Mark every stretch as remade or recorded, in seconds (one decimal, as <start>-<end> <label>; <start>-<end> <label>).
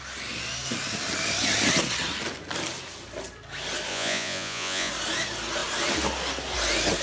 0.0-3.9 recorded; 3.9-4.9 remade; 4.9-7.0 recorded